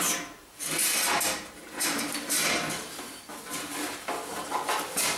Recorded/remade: remade